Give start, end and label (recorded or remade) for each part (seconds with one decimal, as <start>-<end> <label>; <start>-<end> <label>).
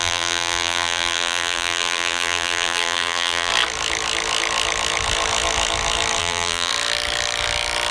0.0-3.5 remade; 3.5-6.2 recorded; 6.2-6.7 remade; 6.7-7.9 recorded